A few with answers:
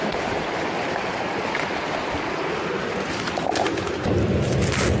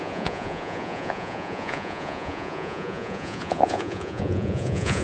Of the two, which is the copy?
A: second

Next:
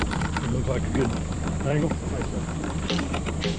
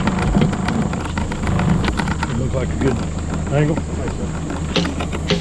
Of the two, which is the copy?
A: first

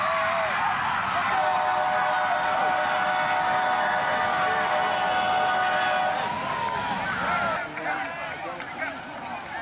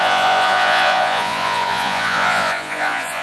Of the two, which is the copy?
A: second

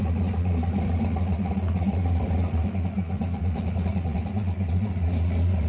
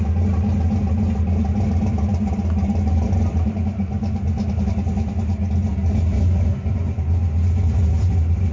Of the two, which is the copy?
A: first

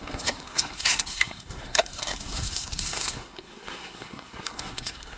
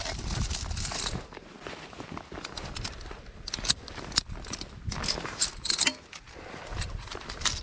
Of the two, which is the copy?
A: first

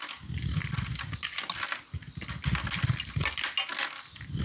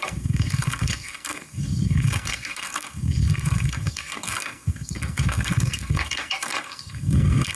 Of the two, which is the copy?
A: second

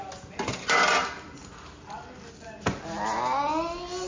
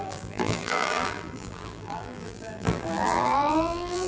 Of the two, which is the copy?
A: second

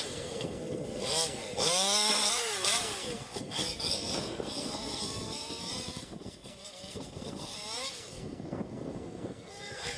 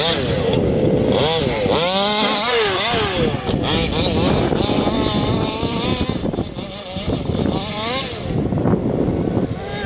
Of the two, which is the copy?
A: first